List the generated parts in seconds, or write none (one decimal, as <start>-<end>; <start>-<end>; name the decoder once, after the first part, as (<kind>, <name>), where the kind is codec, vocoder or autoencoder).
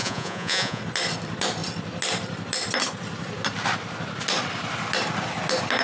0.0-0.8 (vocoder, Vocos)